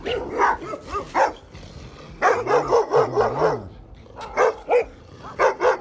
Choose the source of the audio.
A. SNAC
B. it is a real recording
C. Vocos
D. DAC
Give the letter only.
B